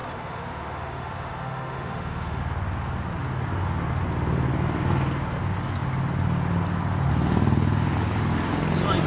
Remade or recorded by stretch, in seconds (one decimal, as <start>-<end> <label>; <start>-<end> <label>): 0.0-2.4 remade; 2.4-9.1 recorded